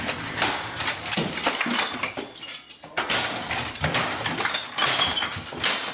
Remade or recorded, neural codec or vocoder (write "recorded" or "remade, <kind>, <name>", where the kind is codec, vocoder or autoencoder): recorded